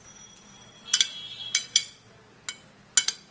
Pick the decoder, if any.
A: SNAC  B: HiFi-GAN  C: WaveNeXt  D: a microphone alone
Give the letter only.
D